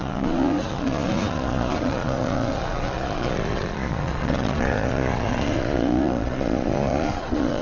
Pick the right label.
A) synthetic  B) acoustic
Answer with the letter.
A